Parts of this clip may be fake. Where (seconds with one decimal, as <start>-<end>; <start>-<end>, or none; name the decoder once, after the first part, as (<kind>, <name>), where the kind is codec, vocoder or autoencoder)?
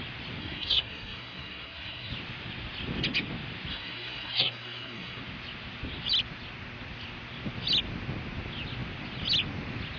0.4-2.1 (codec, SNAC); 3.7-5.2